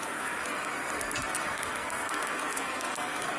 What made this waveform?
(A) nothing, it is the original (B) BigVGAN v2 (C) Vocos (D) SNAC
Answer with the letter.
D